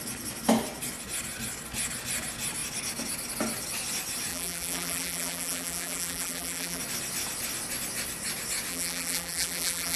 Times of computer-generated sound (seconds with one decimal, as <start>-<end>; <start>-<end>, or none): 4.3-6.8; 8.7-10.0